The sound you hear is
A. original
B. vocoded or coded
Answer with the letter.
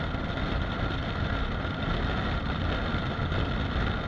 A